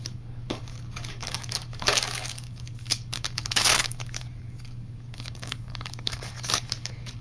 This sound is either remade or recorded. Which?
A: remade